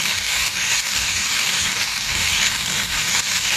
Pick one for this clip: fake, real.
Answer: fake